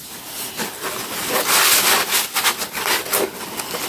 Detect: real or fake real